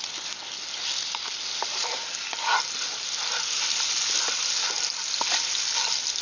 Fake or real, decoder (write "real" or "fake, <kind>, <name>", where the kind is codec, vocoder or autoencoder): real